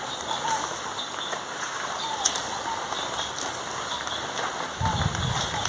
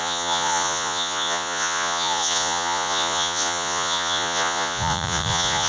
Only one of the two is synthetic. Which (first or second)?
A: second